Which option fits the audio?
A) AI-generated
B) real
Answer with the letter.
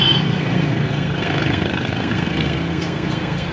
A